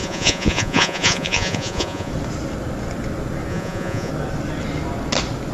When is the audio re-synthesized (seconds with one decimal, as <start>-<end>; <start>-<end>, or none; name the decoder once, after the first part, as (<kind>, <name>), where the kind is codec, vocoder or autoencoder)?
0.0-2.1 (vocoder, Vocos); 3.5-4.1